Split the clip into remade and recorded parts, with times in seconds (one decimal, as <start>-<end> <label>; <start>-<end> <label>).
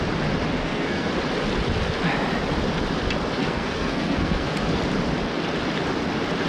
0.0-0.6 recorded; 0.6-1.1 remade; 1.1-3.4 recorded; 3.4-4.8 remade; 4.8-6.5 recorded